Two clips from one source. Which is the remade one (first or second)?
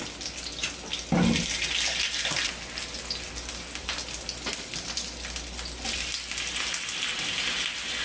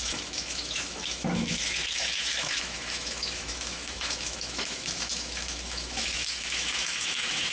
second